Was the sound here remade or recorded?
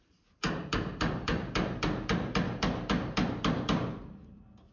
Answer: remade